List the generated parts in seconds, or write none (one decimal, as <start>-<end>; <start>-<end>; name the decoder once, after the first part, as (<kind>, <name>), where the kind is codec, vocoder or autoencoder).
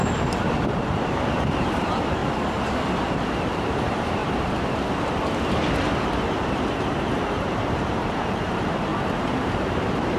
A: 0.6-2.2 (vocoder, BigVGAN v2); 3.1-4.2; 6.9-10.2